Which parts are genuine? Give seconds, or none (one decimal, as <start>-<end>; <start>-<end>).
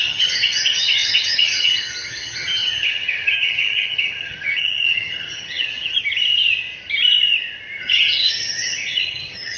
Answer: 6.0-7.8